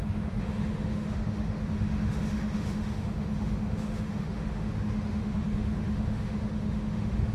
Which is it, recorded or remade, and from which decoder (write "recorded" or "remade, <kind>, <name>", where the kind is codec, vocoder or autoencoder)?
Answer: remade, autoencoder, DAC-VAE